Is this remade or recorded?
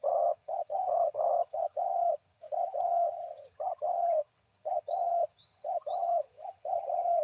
remade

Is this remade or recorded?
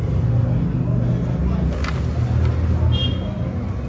recorded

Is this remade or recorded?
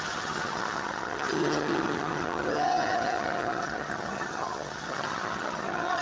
remade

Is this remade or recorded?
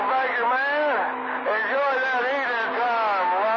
recorded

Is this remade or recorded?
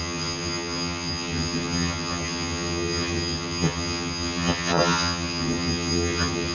remade